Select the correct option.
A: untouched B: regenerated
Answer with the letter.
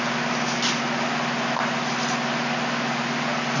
A